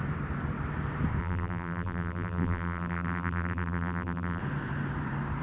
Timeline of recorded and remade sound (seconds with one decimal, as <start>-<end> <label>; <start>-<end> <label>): 0.0-1.2 recorded; 1.2-4.4 remade; 4.4-5.4 recorded